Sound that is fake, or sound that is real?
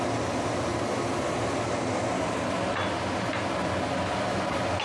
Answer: real